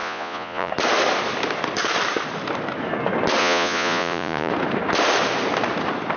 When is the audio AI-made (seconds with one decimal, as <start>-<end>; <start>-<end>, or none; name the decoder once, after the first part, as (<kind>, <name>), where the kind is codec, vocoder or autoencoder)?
0.0-0.7 (vocoder, Vocos); 3.4-4.5

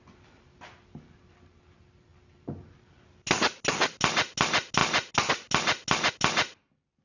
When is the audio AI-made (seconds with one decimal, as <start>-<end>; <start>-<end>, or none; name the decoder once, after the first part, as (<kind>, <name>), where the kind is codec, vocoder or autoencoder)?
none

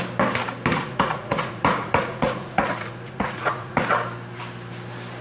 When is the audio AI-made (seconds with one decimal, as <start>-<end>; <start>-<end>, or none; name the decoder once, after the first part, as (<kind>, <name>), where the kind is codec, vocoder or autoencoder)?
0.7-3.8 (vocoder, Vocos)

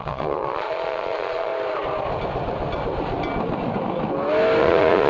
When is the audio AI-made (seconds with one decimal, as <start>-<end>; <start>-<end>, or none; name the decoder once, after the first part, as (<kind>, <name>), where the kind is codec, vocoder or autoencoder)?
0.0-1.5 (vocoder, Vocos); 4.6-5.1